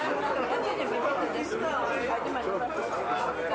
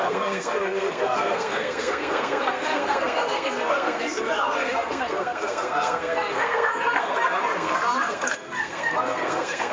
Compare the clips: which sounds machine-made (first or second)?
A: second